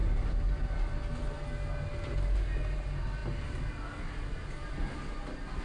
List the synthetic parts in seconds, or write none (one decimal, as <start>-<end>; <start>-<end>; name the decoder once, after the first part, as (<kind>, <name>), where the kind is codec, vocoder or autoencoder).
none